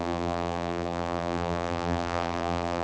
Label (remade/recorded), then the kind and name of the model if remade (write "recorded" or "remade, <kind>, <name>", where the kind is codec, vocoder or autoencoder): remade, vocoder, BigVGAN v2